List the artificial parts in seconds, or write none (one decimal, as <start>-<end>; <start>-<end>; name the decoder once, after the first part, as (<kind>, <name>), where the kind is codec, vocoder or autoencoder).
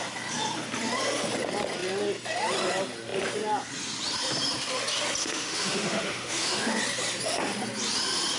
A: 5.2-6.8 (autoencoder, DAC-VAE)